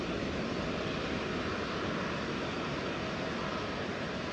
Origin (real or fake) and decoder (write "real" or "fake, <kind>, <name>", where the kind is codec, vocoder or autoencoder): real